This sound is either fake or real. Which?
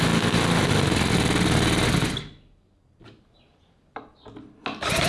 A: real